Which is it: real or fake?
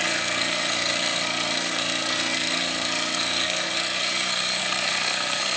fake